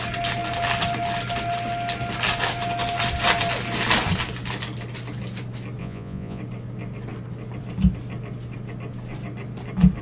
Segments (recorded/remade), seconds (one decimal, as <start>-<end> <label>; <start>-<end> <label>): 0.0-5.8 recorded; 5.8-6.4 remade; 6.4-10.0 recorded